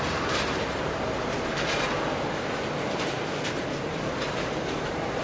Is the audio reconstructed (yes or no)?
yes